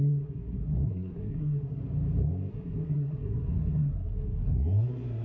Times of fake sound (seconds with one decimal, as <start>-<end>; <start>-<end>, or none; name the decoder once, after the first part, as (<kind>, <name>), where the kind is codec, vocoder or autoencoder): 0.0-1.8 (codec, SNAC); 2.5-5.2